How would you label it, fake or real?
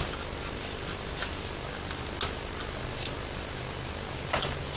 real